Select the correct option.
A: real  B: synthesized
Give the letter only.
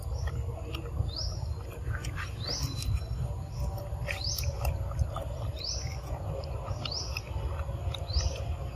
A